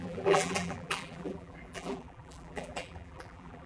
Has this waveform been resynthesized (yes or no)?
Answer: yes